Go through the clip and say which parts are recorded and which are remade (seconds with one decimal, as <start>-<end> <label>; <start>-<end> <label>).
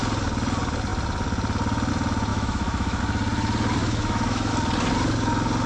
0.0-2.3 recorded; 2.3-3.0 remade; 3.0-3.8 recorded; 3.8-4.5 remade; 4.5-5.7 recorded